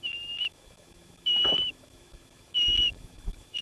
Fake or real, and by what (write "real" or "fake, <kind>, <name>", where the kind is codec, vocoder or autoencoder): fake, autoencoder, DAC-VAE